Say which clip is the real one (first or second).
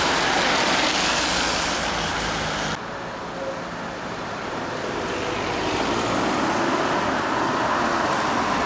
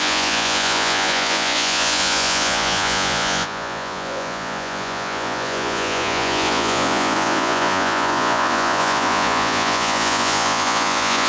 first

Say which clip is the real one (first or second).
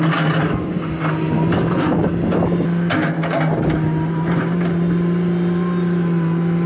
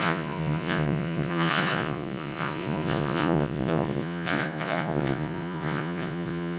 first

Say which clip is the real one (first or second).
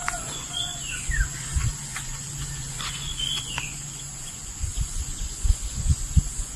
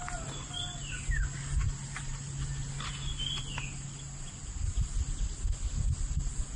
second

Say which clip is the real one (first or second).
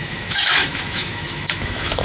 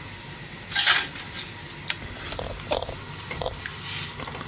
second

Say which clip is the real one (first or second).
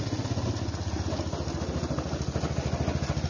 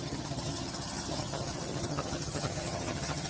first